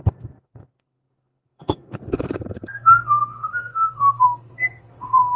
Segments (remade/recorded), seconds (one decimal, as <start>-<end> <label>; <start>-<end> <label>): 0.0-5.4 remade